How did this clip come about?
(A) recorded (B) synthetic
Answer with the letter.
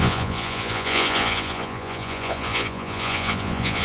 B